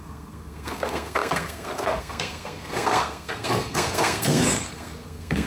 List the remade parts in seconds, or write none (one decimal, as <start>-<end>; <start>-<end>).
0.0-5.5